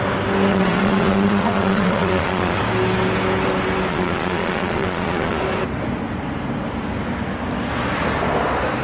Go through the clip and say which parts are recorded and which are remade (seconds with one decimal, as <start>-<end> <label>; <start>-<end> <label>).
0.0-0.5 recorded; 0.5-2.6 remade; 2.6-3.9 recorded; 3.9-5.4 remade; 5.4-8.8 recorded